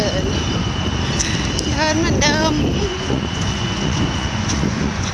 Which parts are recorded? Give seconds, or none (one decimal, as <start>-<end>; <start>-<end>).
0.0-2.8